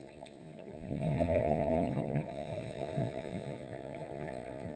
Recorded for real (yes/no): no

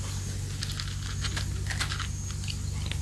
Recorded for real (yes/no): yes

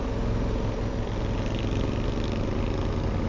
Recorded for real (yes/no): yes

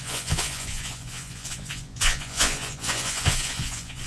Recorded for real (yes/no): no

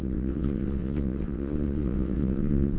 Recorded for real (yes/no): no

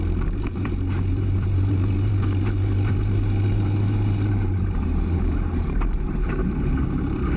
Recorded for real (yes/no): no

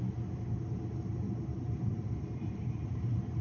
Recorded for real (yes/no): yes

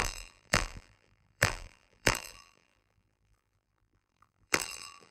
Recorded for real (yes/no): no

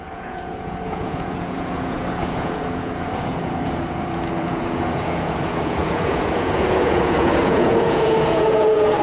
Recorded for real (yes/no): no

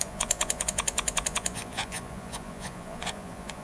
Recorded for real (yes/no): no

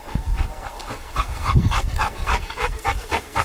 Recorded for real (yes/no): no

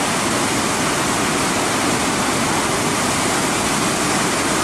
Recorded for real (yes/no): yes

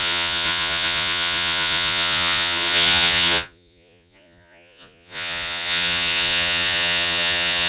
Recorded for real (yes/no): no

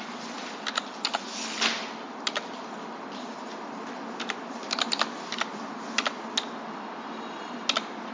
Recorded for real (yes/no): yes